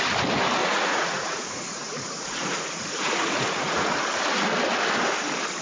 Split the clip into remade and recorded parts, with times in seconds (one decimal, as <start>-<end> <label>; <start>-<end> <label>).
0.0-0.6 recorded; 0.6-4.0 remade; 4.0-5.6 recorded

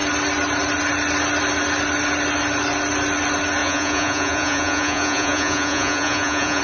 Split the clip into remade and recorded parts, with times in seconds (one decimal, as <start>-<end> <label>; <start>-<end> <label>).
0.0-3.6 recorded; 3.6-6.6 remade

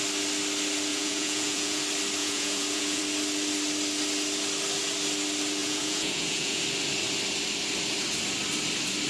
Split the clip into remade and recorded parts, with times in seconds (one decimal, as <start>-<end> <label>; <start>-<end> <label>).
0.0-0.9 recorded; 0.9-1.8 remade; 1.8-2.2 recorded; 2.2-3.0 remade; 3.0-5.6 recorded; 5.6-6.6 remade; 6.6-9.1 recorded

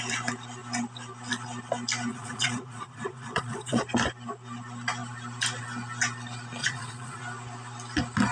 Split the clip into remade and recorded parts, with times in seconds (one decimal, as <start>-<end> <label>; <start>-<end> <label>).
0.0-2.1 recorded; 2.1-3.8 remade; 3.8-6.6 recorded; 6.6-7.2 remade; 7.2-8.3 recorded

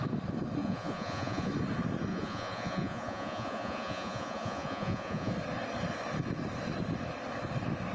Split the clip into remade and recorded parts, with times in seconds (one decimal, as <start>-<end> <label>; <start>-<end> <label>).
0.0-0.6 recorded; 0.6-1.5 remade; 1.5-2.1 recorded; 2.1-5.3 remade; 5.3-7.9 recorded

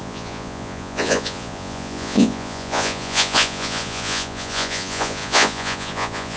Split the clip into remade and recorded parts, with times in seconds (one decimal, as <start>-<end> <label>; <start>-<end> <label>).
0.0-6.4 remade